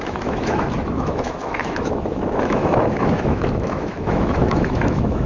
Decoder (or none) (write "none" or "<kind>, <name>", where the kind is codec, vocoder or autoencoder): autoencoder, DAC-VAE